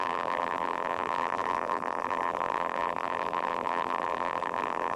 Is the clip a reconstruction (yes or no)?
yes